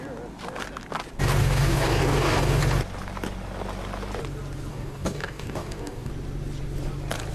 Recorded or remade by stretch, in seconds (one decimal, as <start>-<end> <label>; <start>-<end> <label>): 0.0-1.4 recorded; 1.4-2.6 remade; 2.6-4.7 recorded; 4.7-6.1 remade; 6.1-7.3 recorded